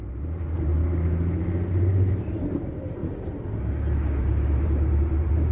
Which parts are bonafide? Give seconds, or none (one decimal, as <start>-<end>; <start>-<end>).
0.7-2.1; 3.0-4.2